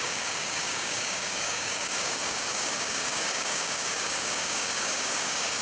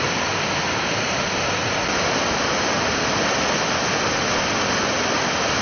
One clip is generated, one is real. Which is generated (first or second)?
first